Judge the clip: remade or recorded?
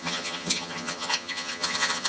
remade